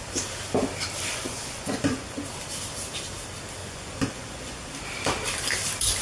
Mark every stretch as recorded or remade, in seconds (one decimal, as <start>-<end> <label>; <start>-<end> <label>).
0.0-1.1 recorded; 1.1-2.2 remade; 2.2-3.6 recorded; 3.6-4.7 remade; 4.7-6.0 recorded